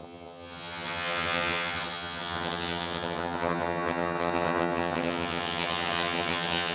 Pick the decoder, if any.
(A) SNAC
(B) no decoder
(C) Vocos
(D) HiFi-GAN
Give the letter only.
D